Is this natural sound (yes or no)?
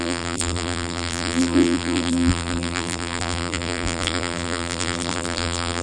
no